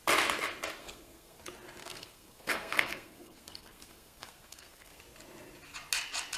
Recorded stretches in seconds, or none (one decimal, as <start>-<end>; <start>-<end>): 0.0-0.8; 1.4-1.8; 5.0-6.4